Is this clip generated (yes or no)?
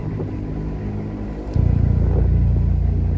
no